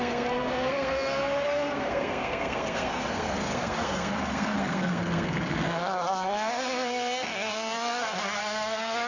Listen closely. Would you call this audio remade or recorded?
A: remade